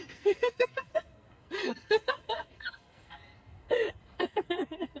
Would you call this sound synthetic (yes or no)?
yes